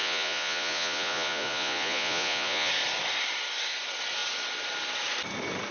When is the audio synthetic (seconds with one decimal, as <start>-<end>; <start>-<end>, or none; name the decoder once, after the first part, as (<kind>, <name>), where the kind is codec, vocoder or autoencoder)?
0.0-2.7 (vocoder, Vocos)